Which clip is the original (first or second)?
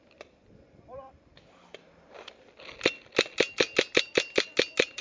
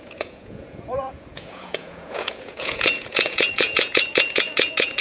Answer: first